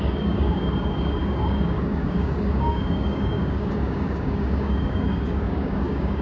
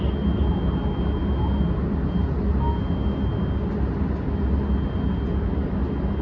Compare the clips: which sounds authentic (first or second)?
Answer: second